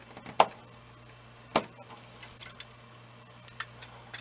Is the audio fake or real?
real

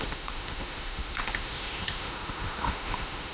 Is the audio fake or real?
fake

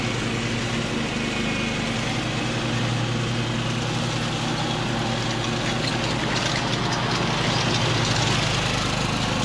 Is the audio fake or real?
real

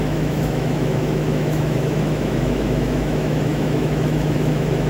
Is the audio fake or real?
fake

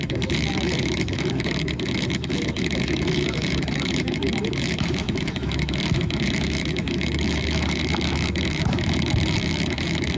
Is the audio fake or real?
fake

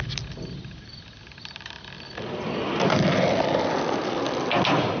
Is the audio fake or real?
real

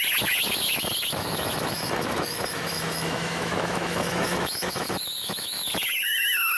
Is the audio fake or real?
fake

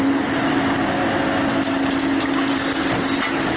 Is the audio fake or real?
real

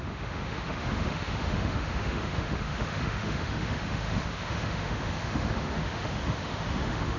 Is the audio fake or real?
fake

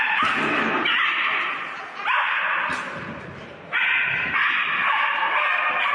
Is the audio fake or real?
real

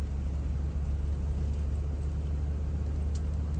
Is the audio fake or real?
real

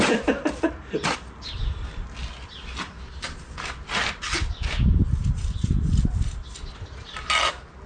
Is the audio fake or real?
real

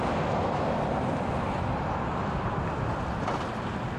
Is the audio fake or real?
real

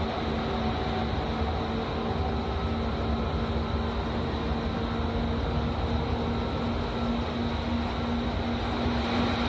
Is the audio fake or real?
real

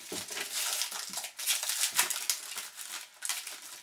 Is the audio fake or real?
real